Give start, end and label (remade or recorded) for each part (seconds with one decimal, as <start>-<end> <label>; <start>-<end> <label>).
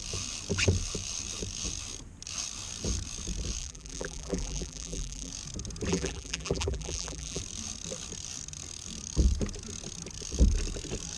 0.0-3.6 recorded; 3.6-5.3 remade; 5.3-5.9 recorded; 5.9-7.4 remade; 7.4-11.2 recorded